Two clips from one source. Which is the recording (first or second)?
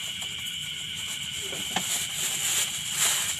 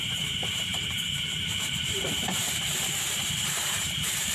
first